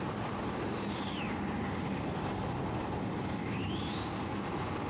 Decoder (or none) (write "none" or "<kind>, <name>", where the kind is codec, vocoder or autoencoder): none